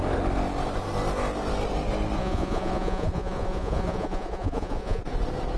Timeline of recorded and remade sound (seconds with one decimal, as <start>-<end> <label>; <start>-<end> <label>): 0.0-2.2 recorded; 2.2-5.0 remade; 5.0-5.6 recorded